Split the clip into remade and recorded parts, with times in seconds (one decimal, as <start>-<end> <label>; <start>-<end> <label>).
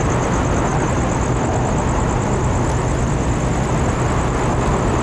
0.0-5.0 recorded